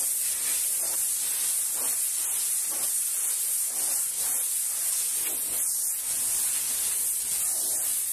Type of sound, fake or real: real